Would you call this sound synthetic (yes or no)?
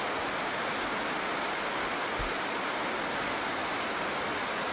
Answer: no